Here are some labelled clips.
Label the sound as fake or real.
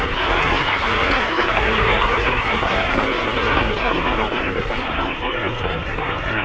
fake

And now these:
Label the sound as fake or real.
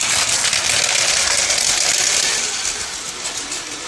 real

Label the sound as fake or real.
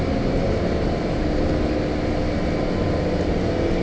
real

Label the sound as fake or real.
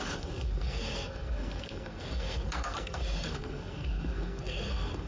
fake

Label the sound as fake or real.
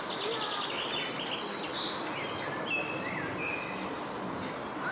real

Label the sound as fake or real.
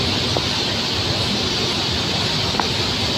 real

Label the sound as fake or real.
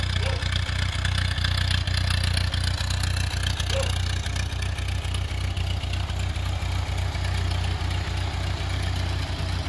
real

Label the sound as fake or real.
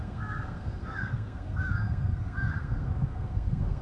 fake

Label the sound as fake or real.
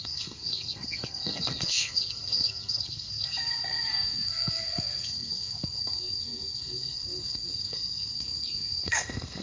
fake